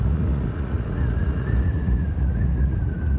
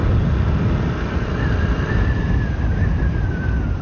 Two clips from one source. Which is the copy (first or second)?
first